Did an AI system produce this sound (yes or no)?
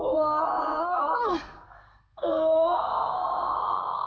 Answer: yes